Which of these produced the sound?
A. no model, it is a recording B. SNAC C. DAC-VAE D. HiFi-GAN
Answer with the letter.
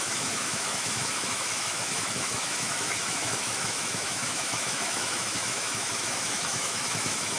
C